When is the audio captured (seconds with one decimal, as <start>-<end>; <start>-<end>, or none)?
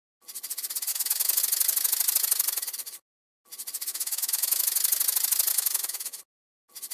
0.0-0.9; 1.4-3.9; 4.6-5.5; 6.2-6.9